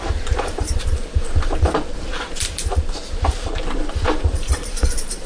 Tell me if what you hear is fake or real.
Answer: fake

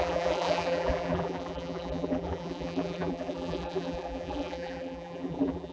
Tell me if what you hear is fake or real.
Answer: fake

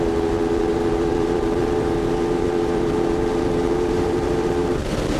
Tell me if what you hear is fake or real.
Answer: fake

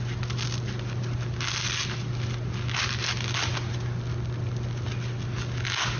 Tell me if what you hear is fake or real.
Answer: real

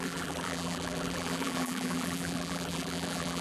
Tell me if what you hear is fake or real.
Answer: fake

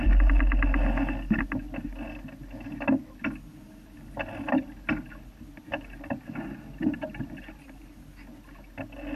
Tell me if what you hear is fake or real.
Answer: real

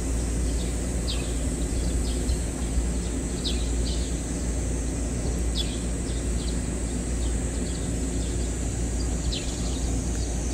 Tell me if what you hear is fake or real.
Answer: real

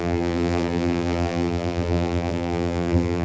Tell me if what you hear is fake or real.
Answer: fake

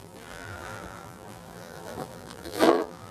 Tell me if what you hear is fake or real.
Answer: fake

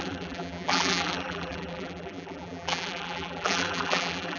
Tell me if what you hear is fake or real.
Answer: fake